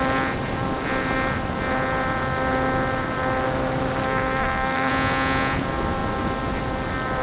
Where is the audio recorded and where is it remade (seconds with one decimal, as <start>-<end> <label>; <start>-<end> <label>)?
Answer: 0.0-4.0 recorded; 4.0-4.9 remade; 4.9-7.2 recorded

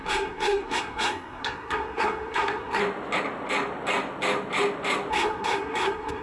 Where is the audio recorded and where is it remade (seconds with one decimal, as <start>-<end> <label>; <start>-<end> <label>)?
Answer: 0.0-2.8 remade; 2.8-5.1 recorded; 5.1-6.2 remade

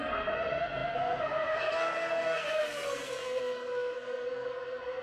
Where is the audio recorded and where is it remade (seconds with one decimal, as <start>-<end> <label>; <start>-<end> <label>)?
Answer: 0.0-5.0 remade

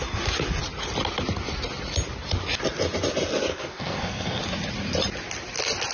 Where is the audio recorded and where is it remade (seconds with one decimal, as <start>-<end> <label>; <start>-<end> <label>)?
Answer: 0.0-3.5 recorded; 3.5-4.4 remade; 4.4-5.9 recorded

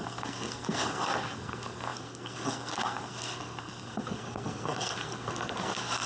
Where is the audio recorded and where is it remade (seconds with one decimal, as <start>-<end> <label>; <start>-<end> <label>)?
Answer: 0.0-6.1 remade

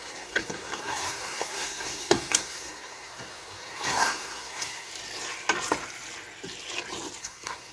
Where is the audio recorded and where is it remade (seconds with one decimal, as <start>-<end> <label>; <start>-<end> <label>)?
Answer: 0.0-4.9 remade; 4.9-7.2 recorded; 7.2-7.7 remade

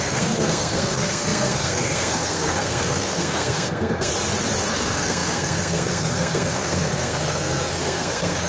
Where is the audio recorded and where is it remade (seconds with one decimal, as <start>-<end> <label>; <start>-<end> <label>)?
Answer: 0.0-4.1 remade; 4.1-4.7 recorded; 4.7-8.5 remade

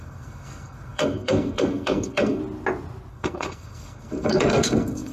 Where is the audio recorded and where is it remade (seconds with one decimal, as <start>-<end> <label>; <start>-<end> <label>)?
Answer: 0.0-2.4 remade; 2.4-3.1 recorded; 3.1-5.1 remade